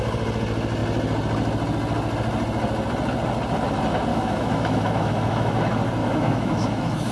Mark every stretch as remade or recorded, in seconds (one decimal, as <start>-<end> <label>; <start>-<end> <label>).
0.0-4.1 recorded; 4.1-5.6 remade; 5.6-6.0 recorded; 6.0-7.1 remade